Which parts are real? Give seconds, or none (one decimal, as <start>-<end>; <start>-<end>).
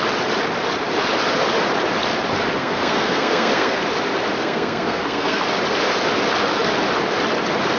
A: 0.0-2.6; 3.8-4.4; 5.4-7.8